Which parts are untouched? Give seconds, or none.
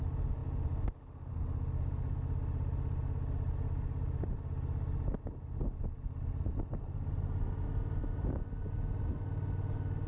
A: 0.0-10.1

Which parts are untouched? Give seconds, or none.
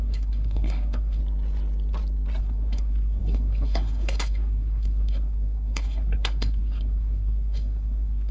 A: 1.2-2.4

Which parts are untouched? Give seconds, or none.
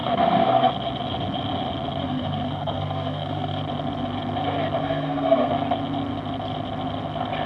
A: 0.7-2.0; 3.6-4.8; 5.5-7.5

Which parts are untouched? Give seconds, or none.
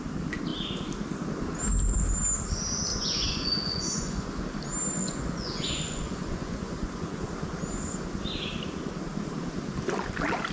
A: 0.0-2.9; 4.4-5.0; 7.3-10.5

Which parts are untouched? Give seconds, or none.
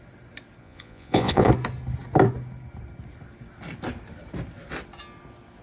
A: 0.0-0.6; 1.5-5.6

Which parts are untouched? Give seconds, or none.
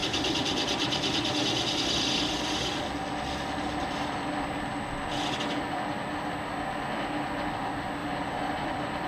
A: 1.3-8.0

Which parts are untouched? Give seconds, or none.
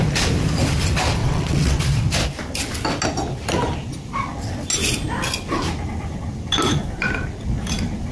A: 0.0-1.2; 1.8-8.1